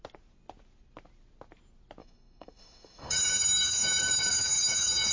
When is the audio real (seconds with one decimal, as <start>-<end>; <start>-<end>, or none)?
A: 0.0-2.0

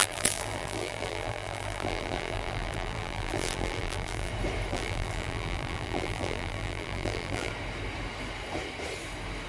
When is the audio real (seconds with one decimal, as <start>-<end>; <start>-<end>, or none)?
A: 4.3-4.7; 7.5-9.5

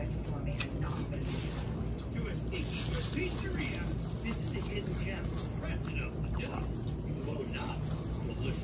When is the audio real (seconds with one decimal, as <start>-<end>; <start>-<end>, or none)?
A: 0.0-8.6

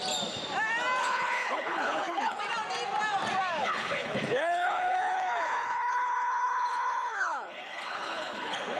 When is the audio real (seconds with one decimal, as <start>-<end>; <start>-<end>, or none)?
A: 0.0-1.0; 2.4-3.6

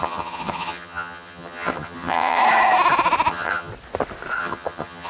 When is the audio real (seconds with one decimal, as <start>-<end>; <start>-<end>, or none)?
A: 2.4-3.3; 3.7-4.4

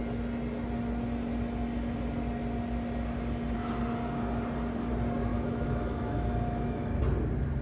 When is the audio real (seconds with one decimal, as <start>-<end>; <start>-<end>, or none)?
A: 0.0-5.3; 7.0-7.6

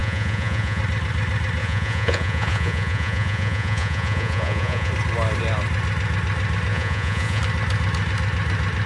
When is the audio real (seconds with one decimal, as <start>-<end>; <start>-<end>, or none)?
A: 0.8-1.6; 4.9-6.7; 7.4-8.9